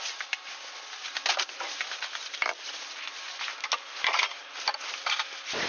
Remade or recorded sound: recorded